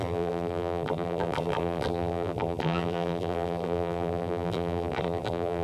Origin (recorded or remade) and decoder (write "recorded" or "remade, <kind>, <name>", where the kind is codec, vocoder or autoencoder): remade, vocoder, BigVGAN v2